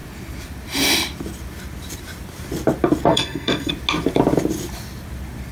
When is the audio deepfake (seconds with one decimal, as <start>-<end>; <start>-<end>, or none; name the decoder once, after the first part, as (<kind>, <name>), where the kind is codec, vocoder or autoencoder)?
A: 3.1-3.7 (codec, SNAC)